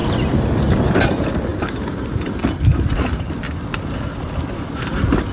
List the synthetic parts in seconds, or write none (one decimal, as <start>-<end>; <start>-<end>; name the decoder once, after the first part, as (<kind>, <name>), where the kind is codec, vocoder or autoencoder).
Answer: none

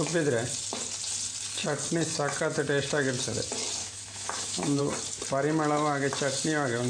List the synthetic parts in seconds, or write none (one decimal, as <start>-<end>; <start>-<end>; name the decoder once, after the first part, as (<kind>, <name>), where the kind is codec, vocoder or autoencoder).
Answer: 3.8-4.8 (autoencoder, DAC-VAE)

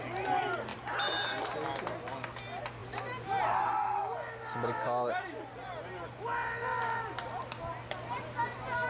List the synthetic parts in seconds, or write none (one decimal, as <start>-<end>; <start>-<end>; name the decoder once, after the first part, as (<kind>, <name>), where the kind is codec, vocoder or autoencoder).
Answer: none